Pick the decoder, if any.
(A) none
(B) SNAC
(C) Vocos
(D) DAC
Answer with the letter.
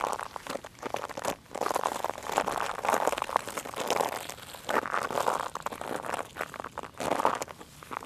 A